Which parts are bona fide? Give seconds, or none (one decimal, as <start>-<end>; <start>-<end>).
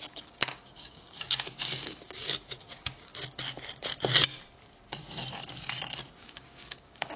3.1-6.0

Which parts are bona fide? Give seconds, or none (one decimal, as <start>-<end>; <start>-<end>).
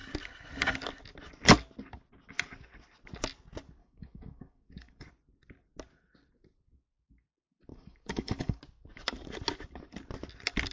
0.0-3.8; 5.1-7.7; 8.6-10.7